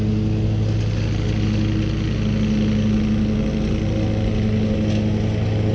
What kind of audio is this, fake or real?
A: real